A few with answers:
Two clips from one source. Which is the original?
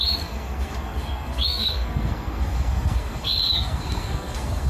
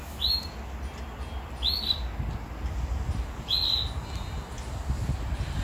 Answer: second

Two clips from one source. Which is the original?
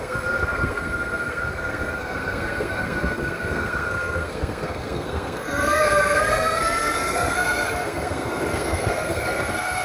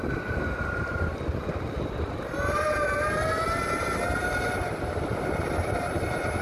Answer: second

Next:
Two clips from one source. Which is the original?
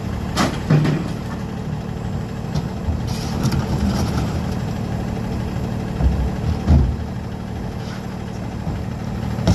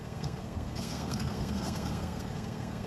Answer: first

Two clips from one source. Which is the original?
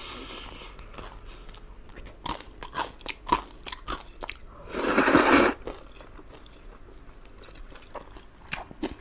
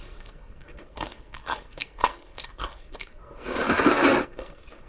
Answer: first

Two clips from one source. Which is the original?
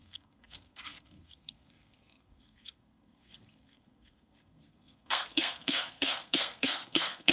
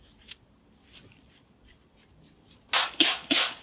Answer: second